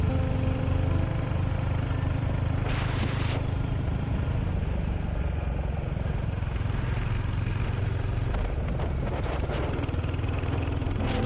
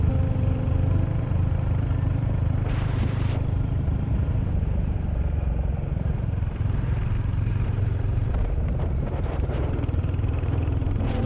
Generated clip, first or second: second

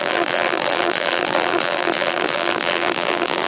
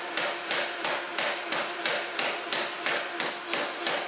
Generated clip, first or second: first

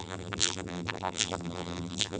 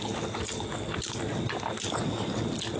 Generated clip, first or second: first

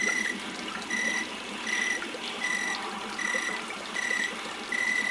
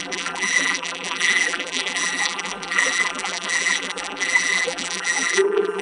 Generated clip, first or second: second